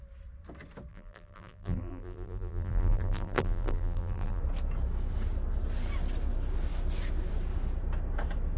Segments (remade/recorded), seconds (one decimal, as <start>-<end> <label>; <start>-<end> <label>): 0.0-0.9 recorded; 0.9-4.4 remade; 4.4-8.6 recorded